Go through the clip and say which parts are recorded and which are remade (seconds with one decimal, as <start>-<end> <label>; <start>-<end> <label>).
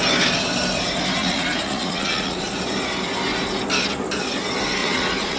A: 0.0-1.2 recorded; 1.2-2.4 remade; 2.4-4.8 recorded; 4.8-5.4 remade